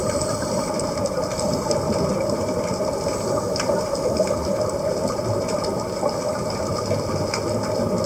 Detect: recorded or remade recorded